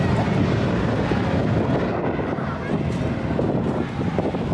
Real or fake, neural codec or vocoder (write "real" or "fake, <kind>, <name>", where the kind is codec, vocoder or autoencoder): real